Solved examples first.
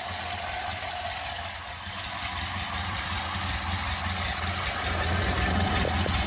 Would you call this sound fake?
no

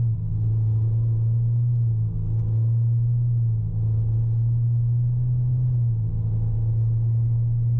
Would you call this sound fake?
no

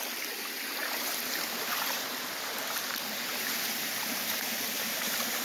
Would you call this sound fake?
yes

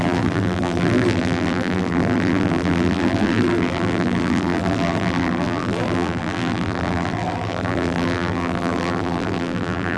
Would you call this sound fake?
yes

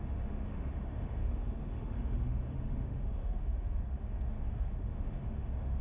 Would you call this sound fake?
yes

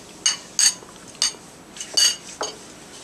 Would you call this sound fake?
no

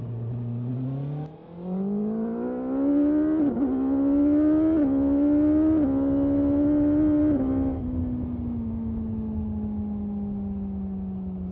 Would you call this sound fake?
no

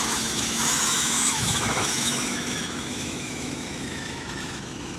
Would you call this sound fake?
yes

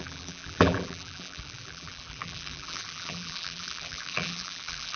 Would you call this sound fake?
yes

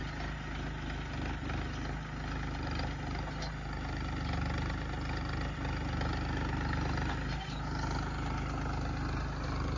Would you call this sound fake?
no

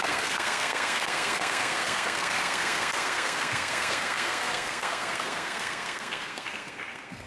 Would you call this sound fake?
yes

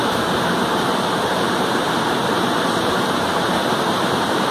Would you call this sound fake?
yes